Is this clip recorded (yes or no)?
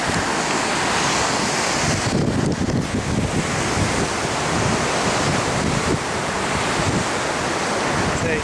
yes